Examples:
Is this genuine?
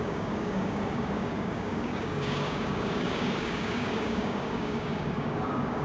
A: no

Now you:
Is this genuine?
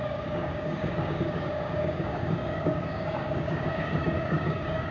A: no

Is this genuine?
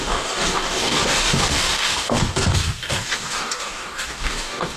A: no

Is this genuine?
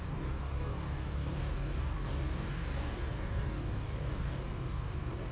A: no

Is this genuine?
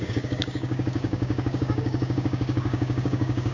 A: no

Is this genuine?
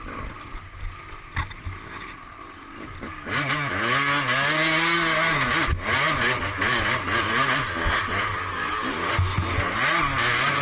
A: yes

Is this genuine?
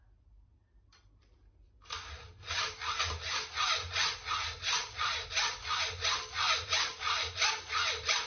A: yes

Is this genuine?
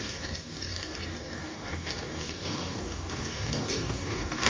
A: no